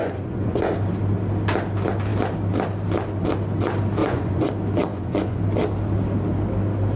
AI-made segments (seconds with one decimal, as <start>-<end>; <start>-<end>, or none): 0.0-0.7; 4.0-4.5; 4.9-5.4